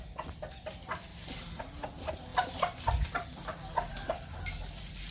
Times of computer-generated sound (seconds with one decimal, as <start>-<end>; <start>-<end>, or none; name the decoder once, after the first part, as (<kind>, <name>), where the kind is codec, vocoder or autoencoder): 0.0-1.1 (vocoder, BigVGAN v2); 1.6-5.1